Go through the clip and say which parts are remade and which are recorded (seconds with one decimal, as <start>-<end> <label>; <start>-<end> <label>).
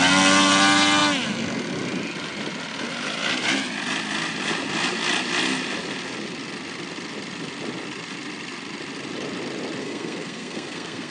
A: 0.0-9.8 recorded; 9.8-11.1 remade